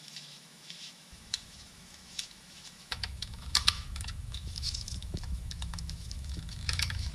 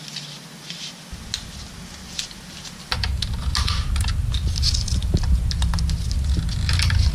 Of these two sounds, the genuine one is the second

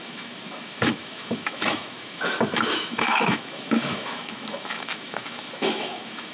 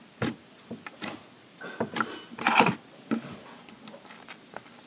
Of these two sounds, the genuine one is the second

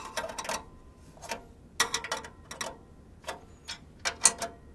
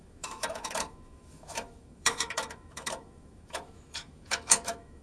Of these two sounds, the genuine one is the first